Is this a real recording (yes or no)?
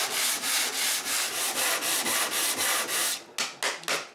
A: yes